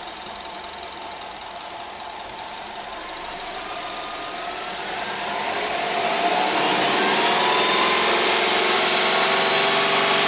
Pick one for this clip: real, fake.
real